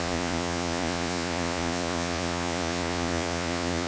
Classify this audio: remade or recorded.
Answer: remade